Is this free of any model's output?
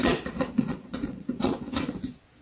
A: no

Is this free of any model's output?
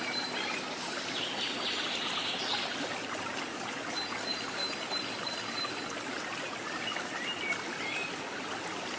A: yes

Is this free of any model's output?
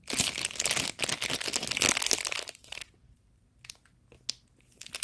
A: yes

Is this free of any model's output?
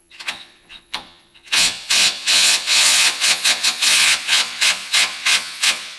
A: no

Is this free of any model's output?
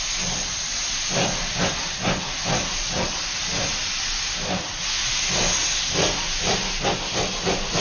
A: yes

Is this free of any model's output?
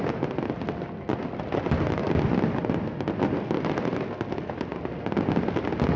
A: yes